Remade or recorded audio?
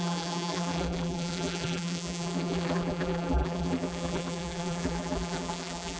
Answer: remade